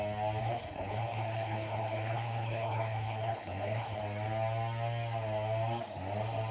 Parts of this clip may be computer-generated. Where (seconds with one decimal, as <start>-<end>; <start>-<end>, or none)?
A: 0.4-4.0